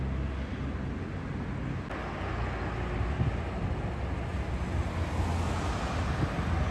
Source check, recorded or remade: recorded